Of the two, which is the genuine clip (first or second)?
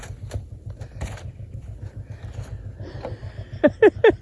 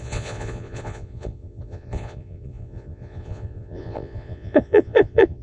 first